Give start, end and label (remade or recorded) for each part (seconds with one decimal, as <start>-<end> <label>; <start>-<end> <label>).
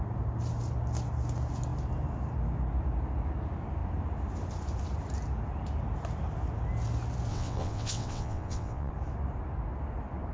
0.0-7.3 recorded; 7.3-8.9 remade; 8.9-10.3 recorded